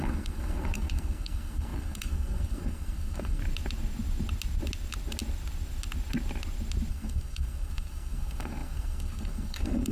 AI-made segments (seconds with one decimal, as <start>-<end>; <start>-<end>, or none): 0.0-3.4; 6.9-9.9